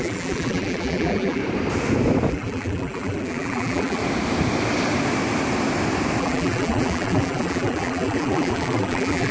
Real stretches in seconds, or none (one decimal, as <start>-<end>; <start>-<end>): 1.4-2.3; 4.0-6.2